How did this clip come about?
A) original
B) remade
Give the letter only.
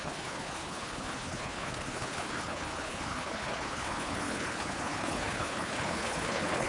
B